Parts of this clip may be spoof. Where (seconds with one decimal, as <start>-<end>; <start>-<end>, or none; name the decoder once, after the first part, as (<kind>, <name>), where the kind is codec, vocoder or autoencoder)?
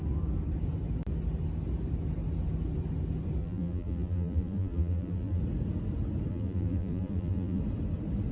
3.4-5.4 (vocoder, BigVGAN v2); 6.3-7.6